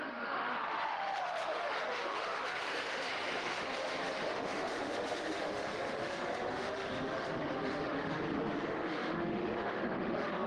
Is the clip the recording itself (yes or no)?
no